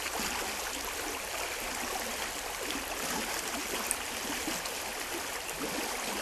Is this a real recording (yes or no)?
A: yes